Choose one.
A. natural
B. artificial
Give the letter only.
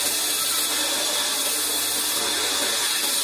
A